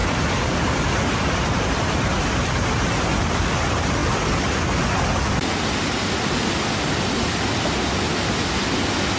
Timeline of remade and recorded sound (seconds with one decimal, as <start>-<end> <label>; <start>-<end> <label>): 0.0-9.2 recorded